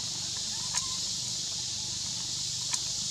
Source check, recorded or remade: recorded